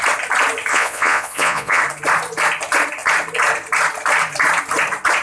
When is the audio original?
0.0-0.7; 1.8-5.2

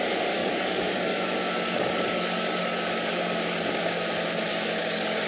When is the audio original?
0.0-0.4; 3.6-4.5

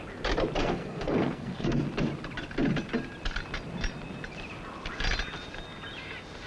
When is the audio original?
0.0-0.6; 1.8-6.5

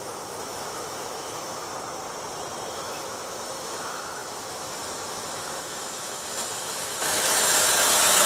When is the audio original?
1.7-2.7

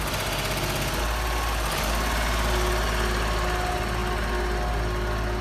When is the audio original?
0.0-5.4

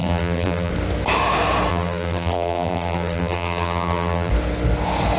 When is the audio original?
0.7-1.7; 4.3-5.2

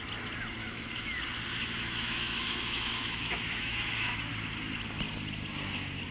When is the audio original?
0.0-0.6; 1.2-1.6; 4.3-6.1